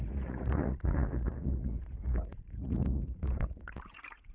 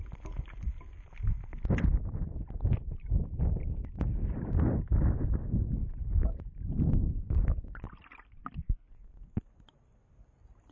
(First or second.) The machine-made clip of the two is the first